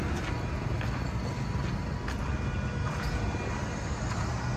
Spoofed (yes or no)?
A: no